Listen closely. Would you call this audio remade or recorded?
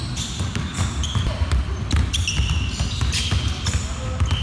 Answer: recorded